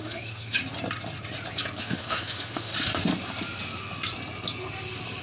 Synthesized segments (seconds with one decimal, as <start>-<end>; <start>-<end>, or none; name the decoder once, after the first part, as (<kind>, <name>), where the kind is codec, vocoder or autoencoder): 0.0-0.6 (autoencoder, DAC-VAE); 1.8-2.7